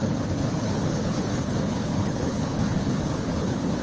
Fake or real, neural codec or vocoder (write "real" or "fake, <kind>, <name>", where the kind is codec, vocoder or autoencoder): fake, codec, HILCodec